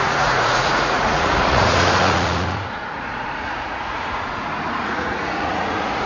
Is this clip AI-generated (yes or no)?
yes